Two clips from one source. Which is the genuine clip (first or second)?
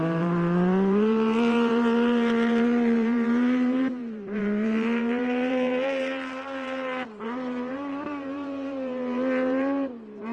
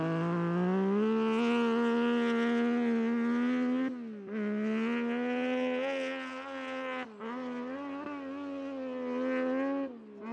second